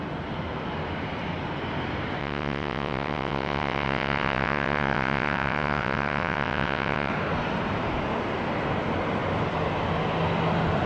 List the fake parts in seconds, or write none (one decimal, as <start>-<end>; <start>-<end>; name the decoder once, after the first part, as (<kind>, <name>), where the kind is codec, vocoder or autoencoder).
2.2-7.1 (vocoder, WaveNeXt)